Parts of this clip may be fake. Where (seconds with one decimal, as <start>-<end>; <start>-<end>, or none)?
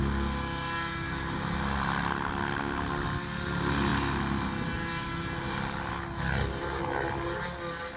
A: none